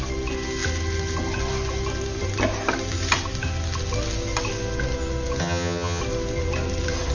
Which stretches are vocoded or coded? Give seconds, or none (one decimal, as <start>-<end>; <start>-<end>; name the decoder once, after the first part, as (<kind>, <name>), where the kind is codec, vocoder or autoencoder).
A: 5.4-6.0 (vocoder, HiFi-GAN)

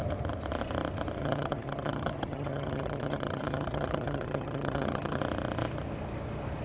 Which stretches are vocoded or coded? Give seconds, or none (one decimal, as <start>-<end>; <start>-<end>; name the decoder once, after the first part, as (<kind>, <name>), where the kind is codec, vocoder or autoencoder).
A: 1.2-5.2 (vocoder, HiFi-GAN)

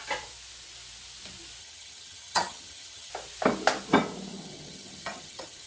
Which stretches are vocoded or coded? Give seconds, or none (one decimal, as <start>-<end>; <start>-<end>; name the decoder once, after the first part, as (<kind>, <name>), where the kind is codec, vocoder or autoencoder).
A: 1.6-3.1 (vocoder, HiFi-GAN); 4.3-5.7

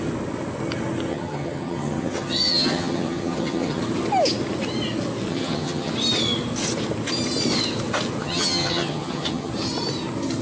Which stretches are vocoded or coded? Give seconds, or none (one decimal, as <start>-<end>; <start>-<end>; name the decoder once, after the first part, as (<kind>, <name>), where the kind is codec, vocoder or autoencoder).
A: 1.1-3.8 (vocoder, HiFi-GAN); 5.3-5.9; 8.2-9.5

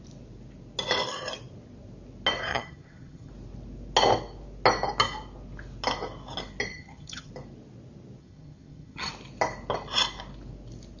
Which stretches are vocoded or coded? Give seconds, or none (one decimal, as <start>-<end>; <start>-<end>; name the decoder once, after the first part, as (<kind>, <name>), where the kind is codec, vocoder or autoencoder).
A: 2.5-3.3 (vocoder, HiFi-GAN); 6.7-7.3; 8.2-9.1

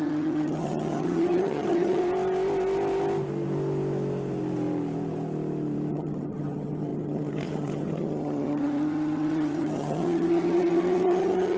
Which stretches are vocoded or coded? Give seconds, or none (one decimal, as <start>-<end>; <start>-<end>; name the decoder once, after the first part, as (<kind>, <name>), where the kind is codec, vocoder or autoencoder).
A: 0.0-2.0 (vocoder, HiFi-GAN); 5.9-11.6

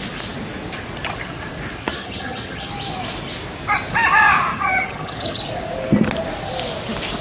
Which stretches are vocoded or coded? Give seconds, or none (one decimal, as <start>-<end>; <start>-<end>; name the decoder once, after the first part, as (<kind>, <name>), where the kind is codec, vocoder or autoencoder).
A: 1.8-2.7 (vocoder, HiFi-GAN); 4.5-5.4

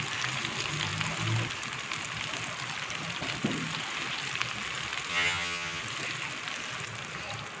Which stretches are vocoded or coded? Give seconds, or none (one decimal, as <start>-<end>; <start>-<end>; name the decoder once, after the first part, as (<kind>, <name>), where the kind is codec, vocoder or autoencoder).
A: 5.1-5.8 (vocoder, HiFi-GAN)